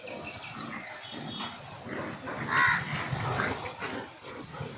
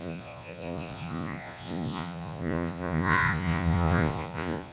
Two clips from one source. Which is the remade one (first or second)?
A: second